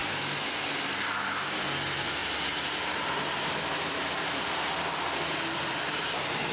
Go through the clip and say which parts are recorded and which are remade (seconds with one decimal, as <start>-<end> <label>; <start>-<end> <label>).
0.0-6.5 recorded